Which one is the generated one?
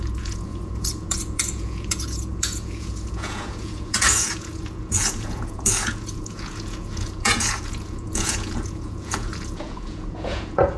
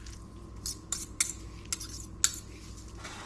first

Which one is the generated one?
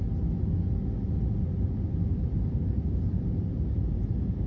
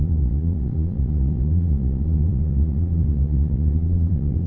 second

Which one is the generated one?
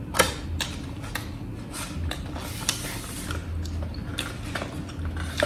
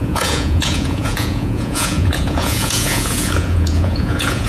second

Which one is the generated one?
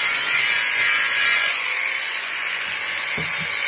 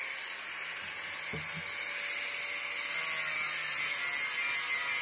first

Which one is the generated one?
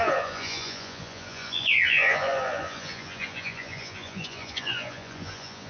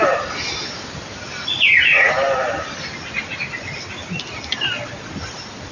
first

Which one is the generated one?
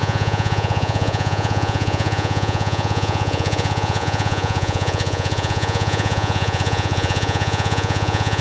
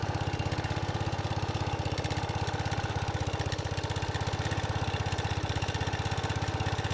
first